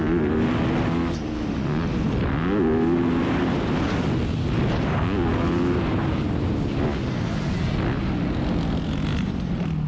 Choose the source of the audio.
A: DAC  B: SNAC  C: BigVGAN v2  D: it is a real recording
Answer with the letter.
D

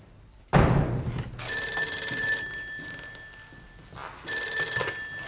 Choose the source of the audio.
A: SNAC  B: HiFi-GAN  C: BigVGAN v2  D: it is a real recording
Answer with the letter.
D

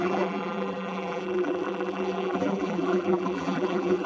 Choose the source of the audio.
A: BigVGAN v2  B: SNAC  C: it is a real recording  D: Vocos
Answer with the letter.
A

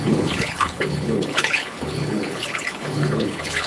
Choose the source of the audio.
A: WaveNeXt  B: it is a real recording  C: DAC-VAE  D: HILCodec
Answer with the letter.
D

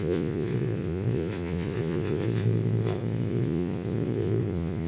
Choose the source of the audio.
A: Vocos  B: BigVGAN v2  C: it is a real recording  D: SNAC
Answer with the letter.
A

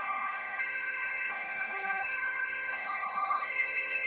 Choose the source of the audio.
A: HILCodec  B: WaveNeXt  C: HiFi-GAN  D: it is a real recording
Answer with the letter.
A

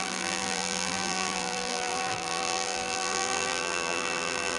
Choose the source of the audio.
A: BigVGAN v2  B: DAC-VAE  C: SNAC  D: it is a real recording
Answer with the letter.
A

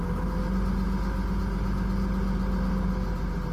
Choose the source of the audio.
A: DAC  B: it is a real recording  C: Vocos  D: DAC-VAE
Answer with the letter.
B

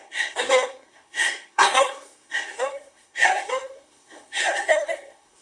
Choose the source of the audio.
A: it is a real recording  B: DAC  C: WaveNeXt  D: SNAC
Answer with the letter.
D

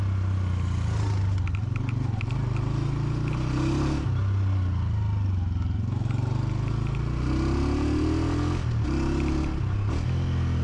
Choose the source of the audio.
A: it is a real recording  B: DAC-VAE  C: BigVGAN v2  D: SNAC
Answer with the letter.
A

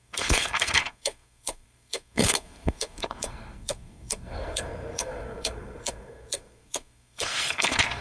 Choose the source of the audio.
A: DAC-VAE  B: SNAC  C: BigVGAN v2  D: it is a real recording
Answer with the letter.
B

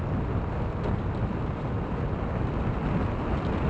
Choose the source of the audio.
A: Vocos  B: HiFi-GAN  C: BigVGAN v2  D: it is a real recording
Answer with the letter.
D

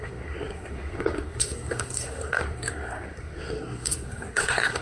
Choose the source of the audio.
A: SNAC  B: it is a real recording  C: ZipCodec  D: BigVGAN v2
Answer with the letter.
A